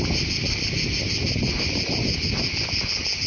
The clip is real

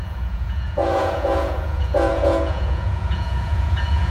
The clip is fake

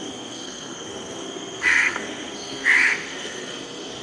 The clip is fake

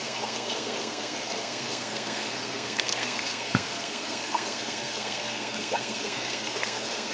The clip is fake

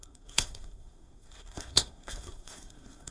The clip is fake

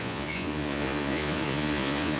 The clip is fake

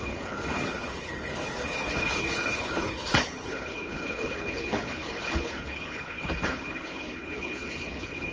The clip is fake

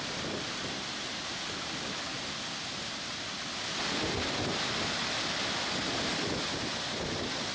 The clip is real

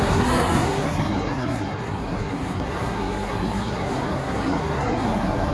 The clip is fake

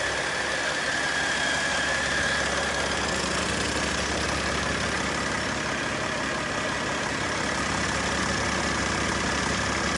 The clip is real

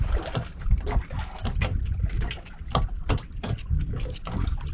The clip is real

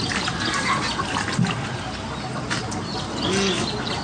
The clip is real